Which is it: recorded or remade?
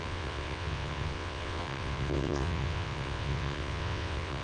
remade